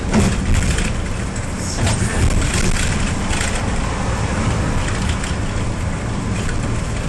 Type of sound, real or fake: real